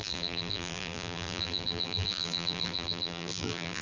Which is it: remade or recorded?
remade